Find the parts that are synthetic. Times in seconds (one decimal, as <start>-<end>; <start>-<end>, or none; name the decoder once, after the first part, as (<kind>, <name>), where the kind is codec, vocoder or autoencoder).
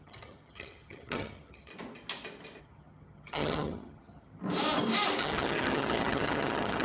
0.0-1.7 (vocoder, HiFi-GAN); 2.6-4.4; 5.2-6.8